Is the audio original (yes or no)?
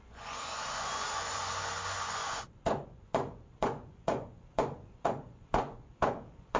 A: no